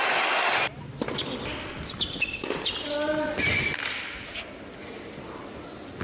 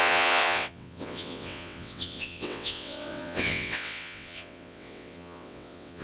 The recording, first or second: first